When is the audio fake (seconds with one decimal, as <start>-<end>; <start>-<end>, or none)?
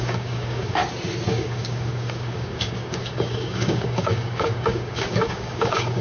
0.0-0.8; 1.3-6.0